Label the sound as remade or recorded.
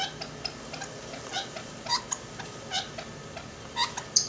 recorded